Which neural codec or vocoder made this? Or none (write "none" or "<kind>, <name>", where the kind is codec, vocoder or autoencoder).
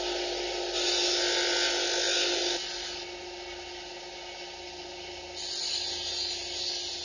none